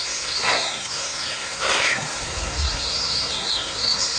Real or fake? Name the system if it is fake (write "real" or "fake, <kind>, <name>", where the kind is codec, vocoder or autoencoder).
fake, codec, SNAC